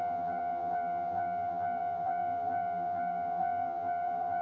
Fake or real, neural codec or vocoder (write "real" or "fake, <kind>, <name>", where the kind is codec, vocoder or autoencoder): fake, vocoder, BigVGAN v2